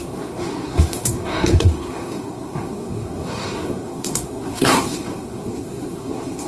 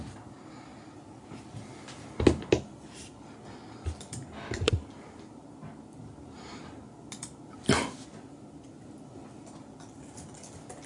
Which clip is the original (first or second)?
second